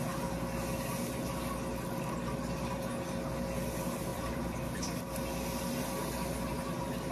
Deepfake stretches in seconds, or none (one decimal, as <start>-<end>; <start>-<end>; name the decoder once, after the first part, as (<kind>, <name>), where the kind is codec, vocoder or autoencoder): 4.1-5.0 (vocoder, BigVGAN v2)